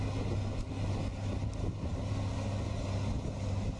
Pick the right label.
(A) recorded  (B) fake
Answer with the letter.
A